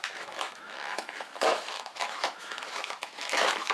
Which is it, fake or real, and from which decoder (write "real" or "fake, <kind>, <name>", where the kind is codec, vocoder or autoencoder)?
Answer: fake, autoencoder, DAC-VAE